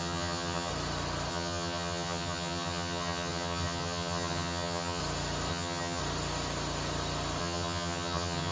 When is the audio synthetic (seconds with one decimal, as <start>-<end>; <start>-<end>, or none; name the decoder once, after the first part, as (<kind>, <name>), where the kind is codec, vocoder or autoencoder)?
0.0-0.7 (vocoder, HiFi-GAN); 1.3-5.0; 5.5-6.0; 7.4-8.5